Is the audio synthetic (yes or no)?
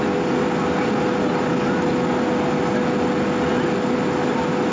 no